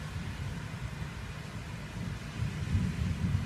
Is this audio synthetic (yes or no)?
no